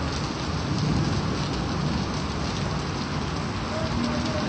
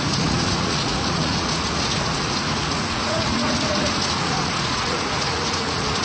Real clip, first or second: first